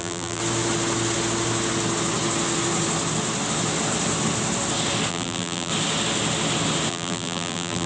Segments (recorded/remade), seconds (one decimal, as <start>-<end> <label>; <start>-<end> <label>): 0.0-0.4 remade; 0.4-5.1 recorded; 5.1-5.7 remade; 5.7-6.9 recorded; 6.9-7.9 remade